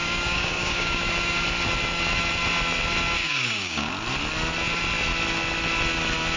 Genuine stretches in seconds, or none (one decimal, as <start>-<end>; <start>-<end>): 1.4-3.2; 3.9-6.4